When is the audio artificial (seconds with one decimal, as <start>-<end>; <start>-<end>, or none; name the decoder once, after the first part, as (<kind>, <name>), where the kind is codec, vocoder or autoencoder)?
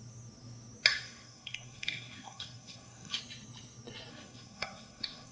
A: 0.9-3.2 (codec, SNAC); 4.1-5.3